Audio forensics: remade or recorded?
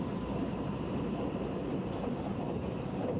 remade